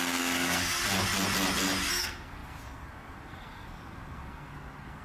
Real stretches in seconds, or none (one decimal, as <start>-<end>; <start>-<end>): 0.8-1.9